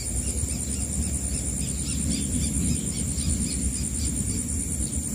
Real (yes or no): yes